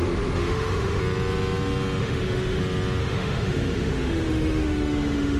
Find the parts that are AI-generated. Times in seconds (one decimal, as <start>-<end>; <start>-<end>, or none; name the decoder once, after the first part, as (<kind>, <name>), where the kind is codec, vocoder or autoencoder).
0.0-1.0 (autoencoder, DAC-VAE); 2.0-2.6; 3.0-5.4